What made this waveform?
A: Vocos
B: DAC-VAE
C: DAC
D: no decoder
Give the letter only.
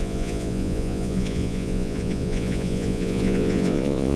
A